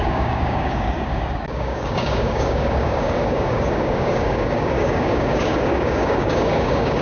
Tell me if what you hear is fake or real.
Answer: fake